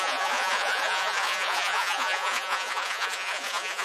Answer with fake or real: fake